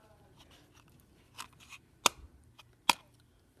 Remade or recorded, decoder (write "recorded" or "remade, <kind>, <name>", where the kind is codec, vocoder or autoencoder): recorded